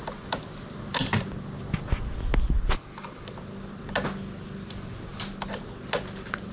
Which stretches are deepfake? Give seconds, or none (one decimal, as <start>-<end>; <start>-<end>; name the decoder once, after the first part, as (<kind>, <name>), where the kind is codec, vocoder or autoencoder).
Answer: none